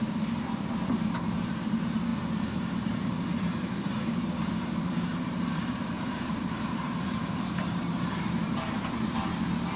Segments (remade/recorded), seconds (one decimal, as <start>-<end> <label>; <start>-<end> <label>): 0.0-9.8 remade